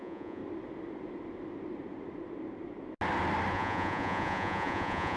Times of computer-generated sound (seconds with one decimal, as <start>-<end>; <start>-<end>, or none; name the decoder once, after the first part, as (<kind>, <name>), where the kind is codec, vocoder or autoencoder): 0.0-0.4 (vocoder, Vocos); 3.5-5.2